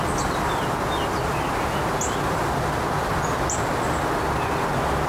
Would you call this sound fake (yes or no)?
no